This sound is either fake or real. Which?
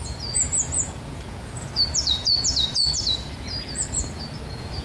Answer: fake